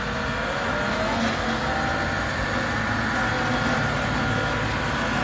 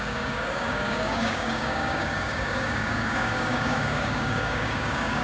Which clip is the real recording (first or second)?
first